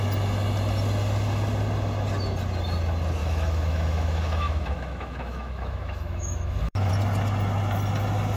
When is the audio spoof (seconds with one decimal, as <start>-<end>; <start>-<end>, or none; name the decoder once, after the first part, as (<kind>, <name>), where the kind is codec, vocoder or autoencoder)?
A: 3.2-6.9 (autoencoder, DAC-VAE)